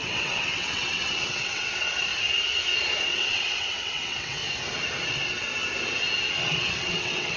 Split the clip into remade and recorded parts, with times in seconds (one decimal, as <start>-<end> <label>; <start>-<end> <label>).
0.0-2.1 remade; 2.1-3.0 recorded; 3.0-4.4 remade; 4.4-5.1 recorded; 5.1-5.5 remade; 5.5-6.4 recorded; 6.4-7.4 remade

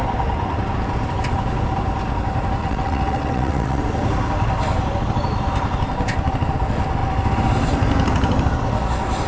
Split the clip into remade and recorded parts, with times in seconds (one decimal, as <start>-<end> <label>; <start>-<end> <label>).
0.0-2.6 recorded; 2.6-3.8 remade; 3.8-9.3 recorded

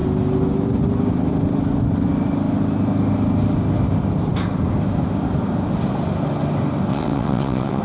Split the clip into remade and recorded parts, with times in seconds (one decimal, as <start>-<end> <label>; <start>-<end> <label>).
0.0-6.9 recorded; 6.9-7.8 remade

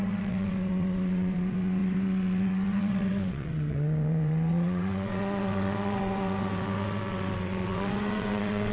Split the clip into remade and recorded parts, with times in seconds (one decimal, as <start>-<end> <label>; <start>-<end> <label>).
0.0-8.7 remade